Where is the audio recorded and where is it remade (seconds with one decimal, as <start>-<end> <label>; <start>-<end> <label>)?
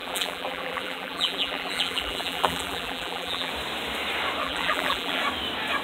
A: 0.0-3.5 remade; 3.5-4.4 recorded; 4.4-5.2 remade; 5.2-5.8 recorded